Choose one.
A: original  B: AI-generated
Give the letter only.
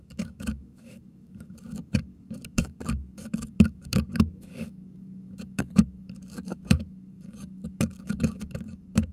B